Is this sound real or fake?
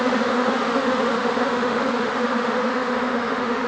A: fake